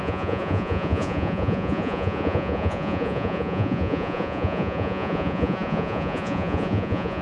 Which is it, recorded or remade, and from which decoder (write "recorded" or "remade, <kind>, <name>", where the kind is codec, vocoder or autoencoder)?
remade, vocoder, Vocos